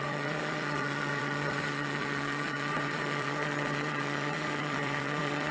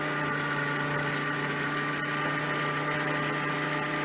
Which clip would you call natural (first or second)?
second